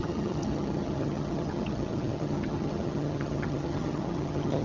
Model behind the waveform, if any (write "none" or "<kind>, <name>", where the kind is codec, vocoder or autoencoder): vocoder, HiFi-GAN